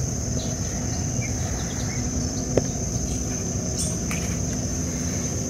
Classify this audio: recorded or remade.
remade